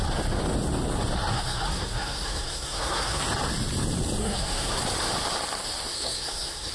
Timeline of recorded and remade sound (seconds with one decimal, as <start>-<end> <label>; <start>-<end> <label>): 0.0-1.3 recorded; 1.3-3.2 remade; 3.2-4.2 recorded; 4.2-4.8 remade; 4.8-5.9 recorded; 5.9-6.7 remade